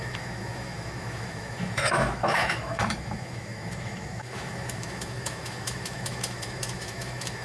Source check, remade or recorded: remade